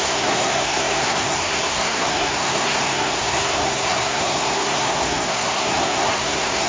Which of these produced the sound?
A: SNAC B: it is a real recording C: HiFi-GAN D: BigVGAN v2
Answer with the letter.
A